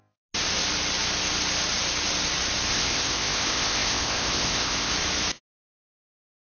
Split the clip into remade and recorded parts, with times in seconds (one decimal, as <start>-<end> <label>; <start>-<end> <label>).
0.0-2.7 recorded; 2.7-4.9 remade; 4.9-6.6 recorded